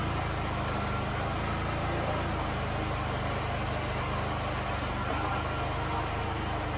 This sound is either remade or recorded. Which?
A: recorded